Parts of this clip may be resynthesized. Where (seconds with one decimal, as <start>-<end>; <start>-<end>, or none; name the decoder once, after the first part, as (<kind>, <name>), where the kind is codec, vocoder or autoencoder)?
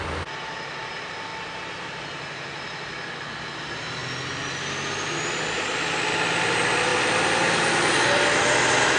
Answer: none